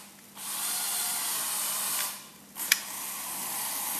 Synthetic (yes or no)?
no